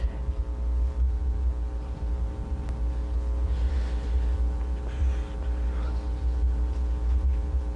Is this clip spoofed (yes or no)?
no